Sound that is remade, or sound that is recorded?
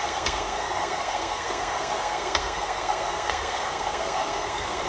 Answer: remade